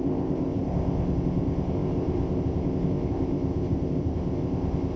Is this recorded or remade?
remade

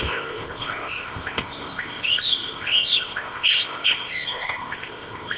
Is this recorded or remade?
remade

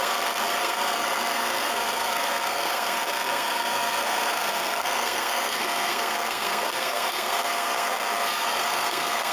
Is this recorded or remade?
remade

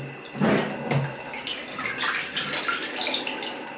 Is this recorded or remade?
recorded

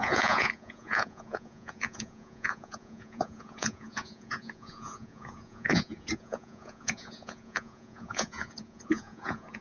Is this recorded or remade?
remade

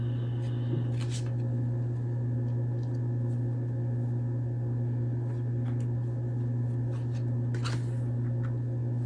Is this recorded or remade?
recorded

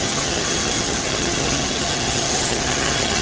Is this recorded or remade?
remade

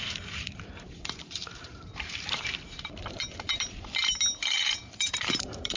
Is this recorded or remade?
remade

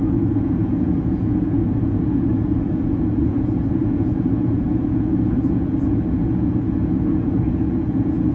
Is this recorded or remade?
remade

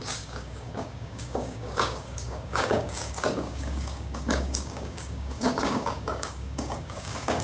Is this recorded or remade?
remade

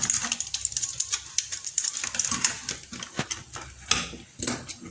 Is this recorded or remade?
recorded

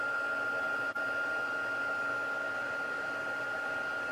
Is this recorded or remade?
recorded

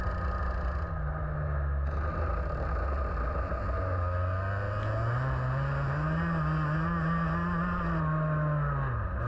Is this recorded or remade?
recorded